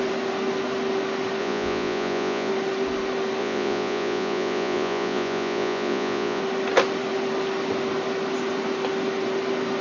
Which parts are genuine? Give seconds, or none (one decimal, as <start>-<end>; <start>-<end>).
0.0-1.4; 2.5-3.4; 6.4-9.8